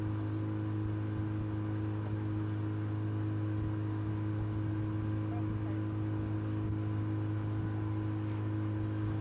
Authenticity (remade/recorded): recorded